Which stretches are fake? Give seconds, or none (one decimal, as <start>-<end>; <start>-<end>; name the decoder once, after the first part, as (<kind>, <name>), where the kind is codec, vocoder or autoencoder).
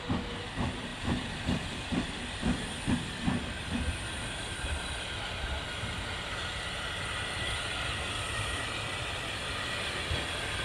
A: 0.9-2.9 (vocoder, BigVGAN v2)